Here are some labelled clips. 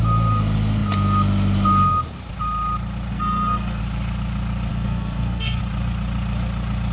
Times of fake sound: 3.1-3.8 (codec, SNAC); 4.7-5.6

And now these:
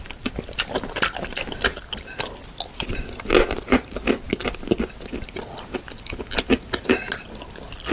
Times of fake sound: none

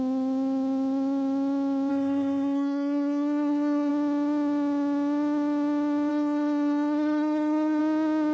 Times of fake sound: 1.9-3.9 (codec, SNAC); 6.1-7.8

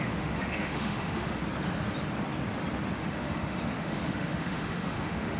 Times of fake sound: 0.0-1.4 (autoencoder, DAC-VAE); 3.0-5.4

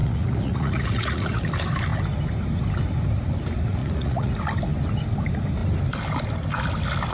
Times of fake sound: 0.0-1.4 (vocoder, Vocos); 3.8-4.3

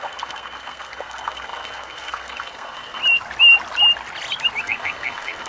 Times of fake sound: 0.0-3.0 (codec, SNAC); 4.6-5.5

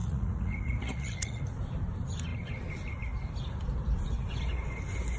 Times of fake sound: 0.0-1.4 (vocoder, Vocos)

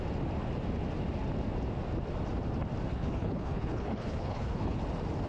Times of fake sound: 2.9-4.8 (codec, HILCodec)